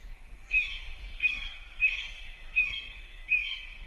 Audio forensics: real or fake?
fake